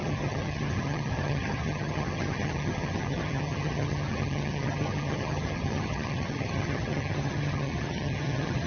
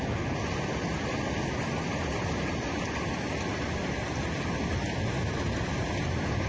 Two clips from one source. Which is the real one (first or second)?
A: second